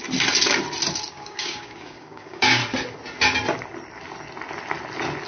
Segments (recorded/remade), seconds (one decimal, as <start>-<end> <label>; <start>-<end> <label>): 0.0-1.1 recorded; 1.1-2.6 remade; 2.6-5.3 recorded